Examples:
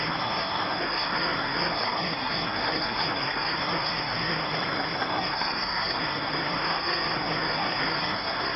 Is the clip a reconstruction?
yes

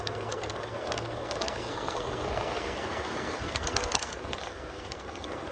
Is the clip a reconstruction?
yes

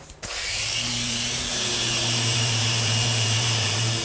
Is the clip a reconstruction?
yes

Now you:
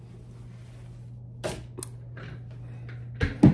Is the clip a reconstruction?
no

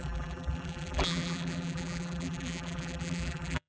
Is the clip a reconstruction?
yes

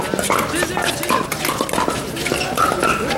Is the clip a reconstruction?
no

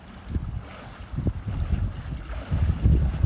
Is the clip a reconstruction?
no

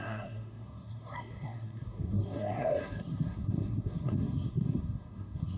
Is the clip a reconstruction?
yes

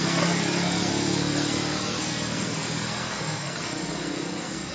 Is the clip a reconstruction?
yes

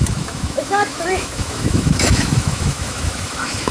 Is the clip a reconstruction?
yes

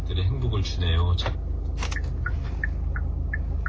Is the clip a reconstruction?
no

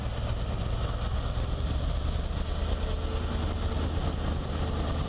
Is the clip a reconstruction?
no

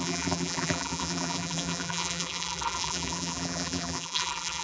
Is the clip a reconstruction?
yes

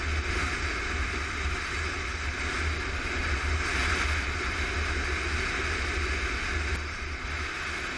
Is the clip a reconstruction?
no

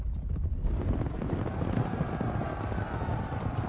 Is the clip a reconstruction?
no